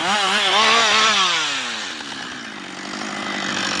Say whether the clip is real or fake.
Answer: real